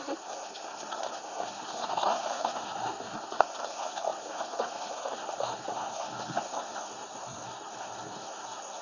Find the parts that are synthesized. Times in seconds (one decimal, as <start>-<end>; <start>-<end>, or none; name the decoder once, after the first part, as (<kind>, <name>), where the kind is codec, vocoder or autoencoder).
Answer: 0.0-8.8 (codec, SNAC)